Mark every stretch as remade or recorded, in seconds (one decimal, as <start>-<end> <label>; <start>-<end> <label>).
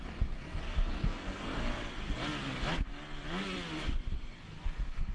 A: 0.0-1.6 remade; 1.6-4.6 recorded; 4.6-5.1 remade